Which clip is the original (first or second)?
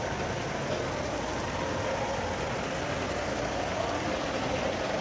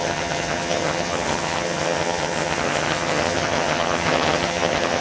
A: first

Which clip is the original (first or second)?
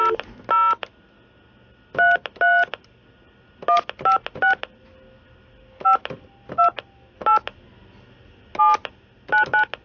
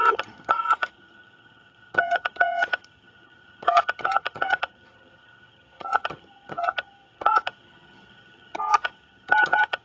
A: first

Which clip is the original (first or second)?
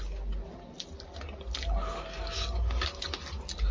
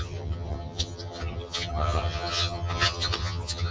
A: first